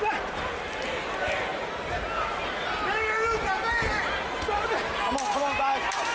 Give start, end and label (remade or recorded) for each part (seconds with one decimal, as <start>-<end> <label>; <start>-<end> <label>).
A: 0.0-6.1 recorded